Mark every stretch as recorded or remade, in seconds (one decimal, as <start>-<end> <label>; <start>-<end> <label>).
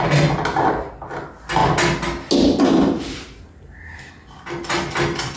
0.0-5.4 recorded